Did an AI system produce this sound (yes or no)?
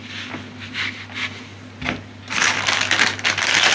no